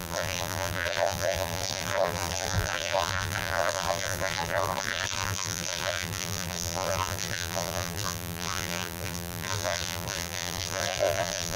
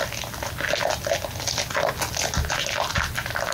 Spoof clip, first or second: first